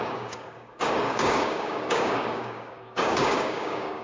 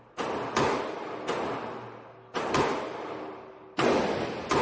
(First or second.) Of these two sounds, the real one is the second